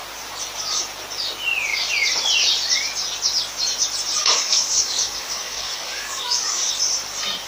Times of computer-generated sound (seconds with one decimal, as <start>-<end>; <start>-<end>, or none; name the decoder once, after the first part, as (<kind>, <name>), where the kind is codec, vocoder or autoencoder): 4.2-6.7 (codec, DAC)